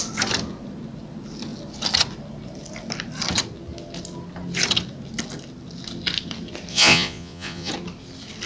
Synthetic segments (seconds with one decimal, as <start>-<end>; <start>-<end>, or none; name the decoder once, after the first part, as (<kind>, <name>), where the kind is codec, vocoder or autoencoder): 6.7-7.7 (vocoder, Vocos)

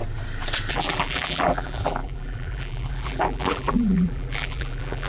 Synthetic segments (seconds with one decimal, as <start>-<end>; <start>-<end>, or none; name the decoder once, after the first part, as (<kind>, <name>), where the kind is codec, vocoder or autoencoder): 0.7-5.1 (vocoder, BigVGAN v2)